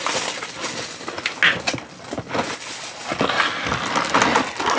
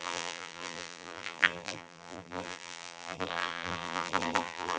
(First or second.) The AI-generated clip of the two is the second